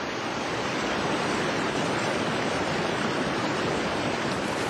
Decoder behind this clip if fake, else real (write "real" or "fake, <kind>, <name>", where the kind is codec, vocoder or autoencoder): fake, vocoder, BigVGAN v2